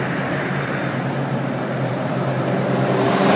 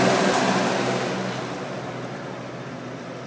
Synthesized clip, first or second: first